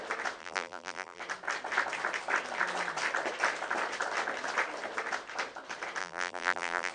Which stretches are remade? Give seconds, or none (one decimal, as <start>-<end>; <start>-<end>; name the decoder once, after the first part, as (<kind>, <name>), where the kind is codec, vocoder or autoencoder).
0.4-1.2 (vocoder, BigVGAN v2); 6.0-6.9

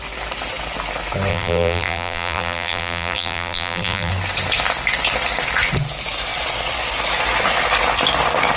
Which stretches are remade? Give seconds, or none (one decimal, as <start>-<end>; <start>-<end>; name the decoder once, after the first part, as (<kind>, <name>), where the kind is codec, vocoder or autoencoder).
1.3-4.1 (vocoder, BigVGAN v2)

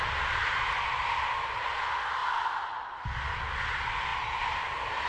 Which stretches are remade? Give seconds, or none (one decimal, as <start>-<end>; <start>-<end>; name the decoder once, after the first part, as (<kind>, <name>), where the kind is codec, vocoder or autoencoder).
0.4-1.1 (vocoder, BigVGAN v2)